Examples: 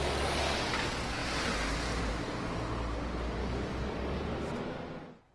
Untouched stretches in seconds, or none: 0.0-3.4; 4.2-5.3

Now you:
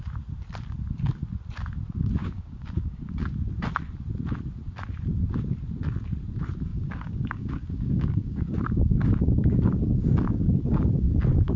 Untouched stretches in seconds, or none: 0.0-2.2; 3.0-6.7; 10.9-11.6

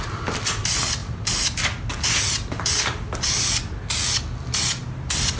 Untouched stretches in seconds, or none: 0.0-5.4